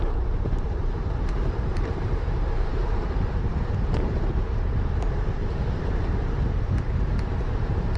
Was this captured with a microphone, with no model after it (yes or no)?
no